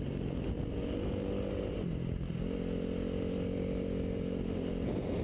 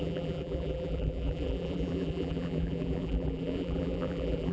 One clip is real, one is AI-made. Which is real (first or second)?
first